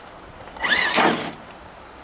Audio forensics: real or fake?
real